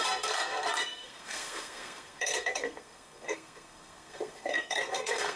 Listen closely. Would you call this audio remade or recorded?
remade